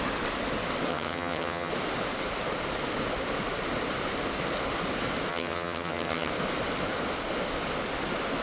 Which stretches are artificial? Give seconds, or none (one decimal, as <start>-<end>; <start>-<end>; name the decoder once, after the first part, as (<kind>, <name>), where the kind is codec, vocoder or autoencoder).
0.9-1.7 (vocoder, HiFi-GAN); 5.3-6.3

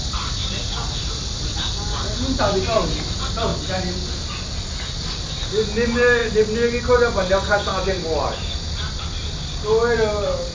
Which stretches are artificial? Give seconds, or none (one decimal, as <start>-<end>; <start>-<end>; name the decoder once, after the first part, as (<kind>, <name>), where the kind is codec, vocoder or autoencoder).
none

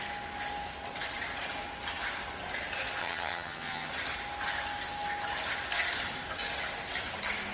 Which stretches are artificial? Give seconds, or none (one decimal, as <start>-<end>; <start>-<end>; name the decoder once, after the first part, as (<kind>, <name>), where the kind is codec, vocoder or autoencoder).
3.0-3.9 (vocoder, HiFi-GAN)

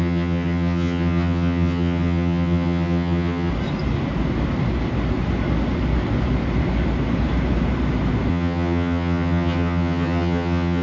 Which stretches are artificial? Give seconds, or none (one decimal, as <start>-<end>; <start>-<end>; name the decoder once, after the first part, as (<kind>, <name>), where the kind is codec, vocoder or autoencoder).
0.0-3.5 (vocoder, HiFi-GAN); 8.3-10.8

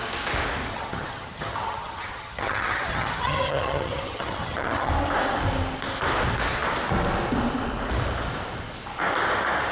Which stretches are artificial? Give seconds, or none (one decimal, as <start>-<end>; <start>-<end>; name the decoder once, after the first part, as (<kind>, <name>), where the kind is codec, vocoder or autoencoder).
0.7-4.9 (vocoder, HiFi-GAN)

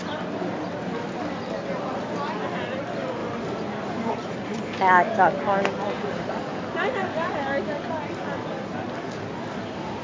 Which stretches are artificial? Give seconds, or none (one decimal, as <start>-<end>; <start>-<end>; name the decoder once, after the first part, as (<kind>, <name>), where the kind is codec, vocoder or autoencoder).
none